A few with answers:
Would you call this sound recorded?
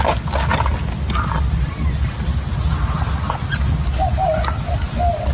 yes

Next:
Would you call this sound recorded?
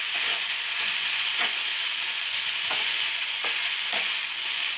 no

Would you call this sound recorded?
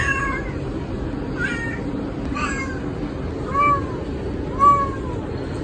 yes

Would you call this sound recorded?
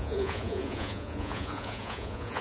no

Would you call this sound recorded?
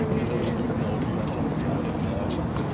yes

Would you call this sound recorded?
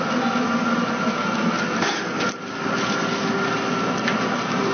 yes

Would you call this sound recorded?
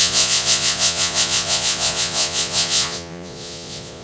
no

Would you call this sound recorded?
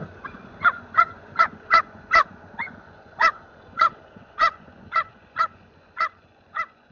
no